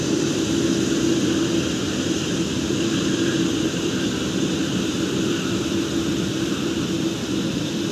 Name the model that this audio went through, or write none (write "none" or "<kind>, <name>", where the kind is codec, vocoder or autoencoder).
vocoder, BigVGAN v2